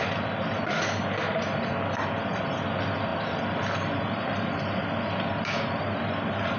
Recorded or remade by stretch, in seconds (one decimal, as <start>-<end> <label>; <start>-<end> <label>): 0.0-6.6 recorded